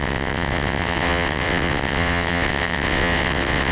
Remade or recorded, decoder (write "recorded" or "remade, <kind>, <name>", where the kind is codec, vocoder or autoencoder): remade, vocoder, WaveNeXt